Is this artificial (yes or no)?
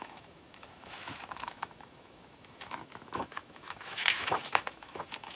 yes